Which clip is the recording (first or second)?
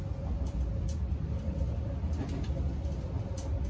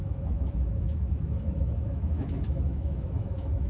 first